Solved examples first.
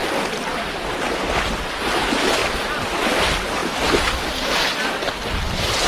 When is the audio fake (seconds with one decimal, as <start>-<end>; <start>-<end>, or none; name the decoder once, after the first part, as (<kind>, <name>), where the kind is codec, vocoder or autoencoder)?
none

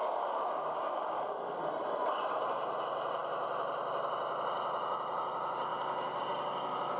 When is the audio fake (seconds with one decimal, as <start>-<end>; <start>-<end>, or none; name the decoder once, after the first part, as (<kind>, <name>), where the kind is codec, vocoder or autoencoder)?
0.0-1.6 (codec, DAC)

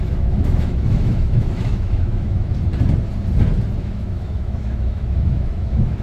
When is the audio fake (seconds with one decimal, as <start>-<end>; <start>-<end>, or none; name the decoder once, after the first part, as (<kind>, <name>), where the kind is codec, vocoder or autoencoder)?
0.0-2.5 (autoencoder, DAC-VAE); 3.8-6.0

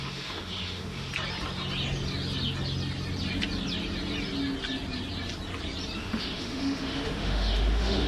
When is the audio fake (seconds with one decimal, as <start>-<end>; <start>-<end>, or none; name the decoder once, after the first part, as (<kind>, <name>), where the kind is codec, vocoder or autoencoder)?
0.0-1.1 (autoencoder, DAC-VAE); 6.0-8.1

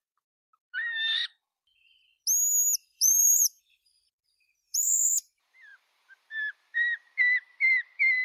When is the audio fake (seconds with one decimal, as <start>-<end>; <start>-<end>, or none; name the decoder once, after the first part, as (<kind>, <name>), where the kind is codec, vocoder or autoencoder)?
0.0-1.2 (vocoder, BigVGAN v2); 2.8-8.2

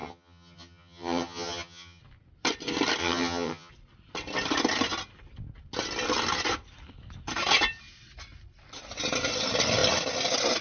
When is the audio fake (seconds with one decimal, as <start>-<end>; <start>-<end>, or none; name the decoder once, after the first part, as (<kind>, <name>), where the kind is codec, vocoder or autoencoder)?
0.0-2.0 (vocoder, HiFi-GAN); 3.0-3.7

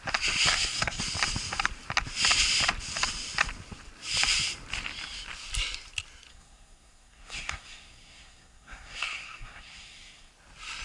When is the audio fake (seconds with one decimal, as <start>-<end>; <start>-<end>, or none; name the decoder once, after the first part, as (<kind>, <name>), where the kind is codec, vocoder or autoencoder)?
0.5-1.0 (codec, SNAC); 6.3-10.3

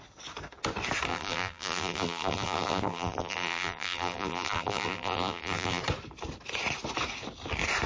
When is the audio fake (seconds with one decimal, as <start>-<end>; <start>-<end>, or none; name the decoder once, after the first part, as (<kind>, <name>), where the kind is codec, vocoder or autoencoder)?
1.1-5.8 (vocoder, BigVGAN v2)